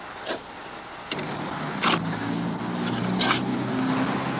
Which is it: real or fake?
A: real